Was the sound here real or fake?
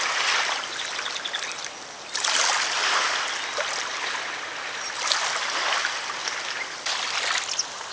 real